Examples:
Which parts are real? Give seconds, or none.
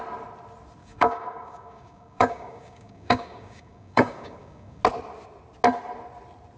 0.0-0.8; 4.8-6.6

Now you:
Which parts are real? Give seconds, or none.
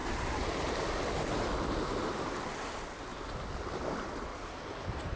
0.0-5.2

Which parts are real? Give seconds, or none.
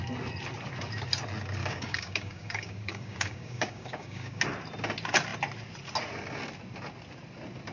0.0-1.6; 4.4-7.7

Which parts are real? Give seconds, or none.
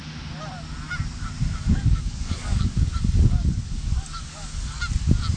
0.0-1.6; 4.8-5.4